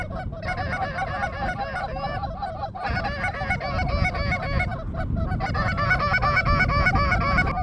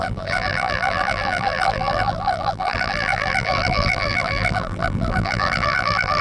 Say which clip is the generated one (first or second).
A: second